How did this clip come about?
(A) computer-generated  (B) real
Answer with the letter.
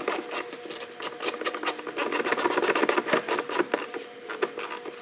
B